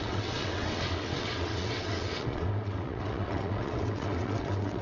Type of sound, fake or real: fake